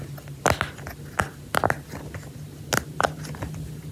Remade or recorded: recorded